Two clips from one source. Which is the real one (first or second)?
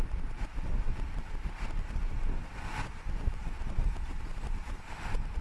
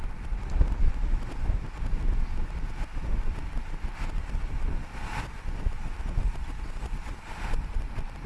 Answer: second